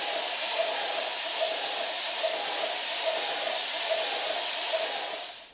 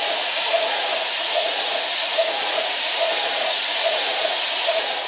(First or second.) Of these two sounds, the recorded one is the first